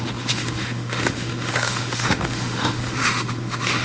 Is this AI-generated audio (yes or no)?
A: yes